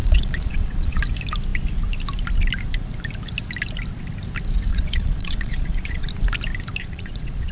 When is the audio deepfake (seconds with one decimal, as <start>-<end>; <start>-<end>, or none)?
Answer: 0.0-1.0; 4.7-6.1; 6.8-7.5